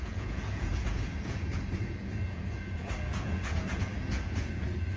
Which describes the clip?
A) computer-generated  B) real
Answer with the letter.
A